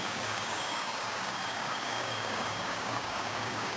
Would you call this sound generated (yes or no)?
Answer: yes